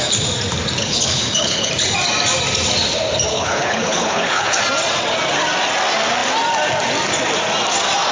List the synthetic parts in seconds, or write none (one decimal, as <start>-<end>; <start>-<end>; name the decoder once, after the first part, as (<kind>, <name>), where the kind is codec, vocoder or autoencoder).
0.8-1.7 (codec, HILCodec); 3.3-4.6